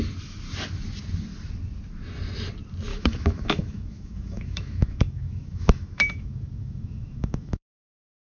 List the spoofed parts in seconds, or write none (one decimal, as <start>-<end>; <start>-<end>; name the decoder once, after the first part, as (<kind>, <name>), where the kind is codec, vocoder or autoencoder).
2.9-7.7 (autoencoder, DAC-VAE)